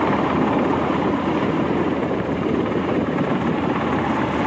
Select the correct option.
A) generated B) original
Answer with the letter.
A